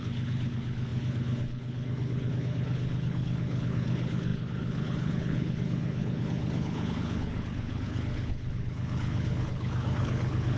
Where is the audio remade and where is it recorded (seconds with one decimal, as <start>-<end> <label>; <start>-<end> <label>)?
0.0-10.6 remade